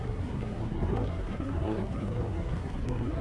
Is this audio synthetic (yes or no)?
yes